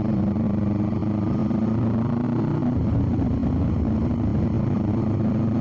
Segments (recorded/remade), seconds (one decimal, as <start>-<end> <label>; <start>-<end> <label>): 0.0-5.6 recorded